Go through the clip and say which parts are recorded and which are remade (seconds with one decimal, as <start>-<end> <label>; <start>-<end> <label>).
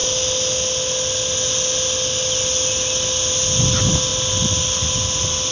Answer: 0.0-5.5 recorded